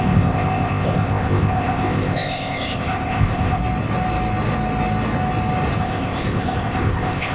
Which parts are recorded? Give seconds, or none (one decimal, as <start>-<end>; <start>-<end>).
3.6-5.8

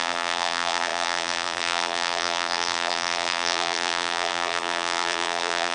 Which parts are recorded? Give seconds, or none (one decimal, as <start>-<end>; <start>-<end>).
none